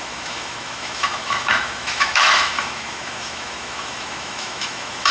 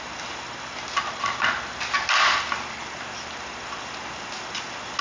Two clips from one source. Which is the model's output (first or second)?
first